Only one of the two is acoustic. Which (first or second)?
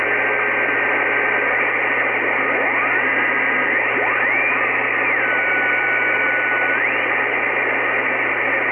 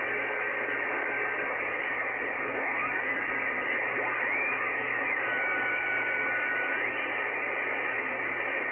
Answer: first